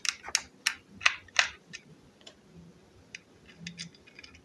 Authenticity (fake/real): real